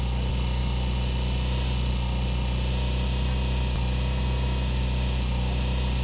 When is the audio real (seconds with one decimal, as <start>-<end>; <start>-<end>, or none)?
0.0-6.0